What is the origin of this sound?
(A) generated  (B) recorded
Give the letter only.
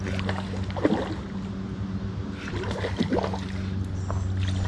B